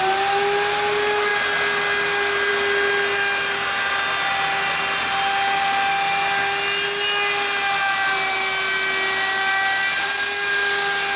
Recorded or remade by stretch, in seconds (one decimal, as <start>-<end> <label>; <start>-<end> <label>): 0.0-11.2 recorded